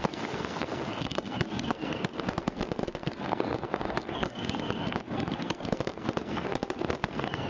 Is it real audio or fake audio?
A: fake